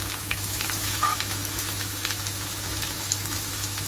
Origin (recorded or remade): remade